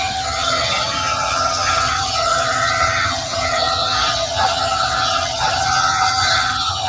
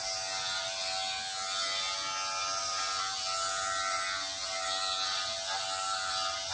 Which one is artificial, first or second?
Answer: first